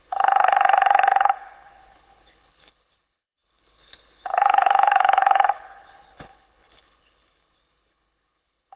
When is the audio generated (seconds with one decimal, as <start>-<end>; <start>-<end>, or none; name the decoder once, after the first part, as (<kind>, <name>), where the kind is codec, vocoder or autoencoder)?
0.0-8.8 (codec, HILCodec)

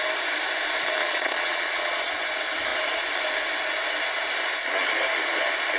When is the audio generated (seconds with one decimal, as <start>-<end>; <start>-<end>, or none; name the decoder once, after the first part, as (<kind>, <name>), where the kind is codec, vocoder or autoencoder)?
1.0-2.1 (vocoder, Vocos)

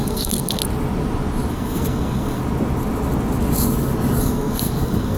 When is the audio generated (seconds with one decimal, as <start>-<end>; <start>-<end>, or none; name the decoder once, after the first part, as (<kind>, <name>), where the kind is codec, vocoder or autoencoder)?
0.0-0.6 (codec, SNAC); 1.5-2.4; 4.2-5.2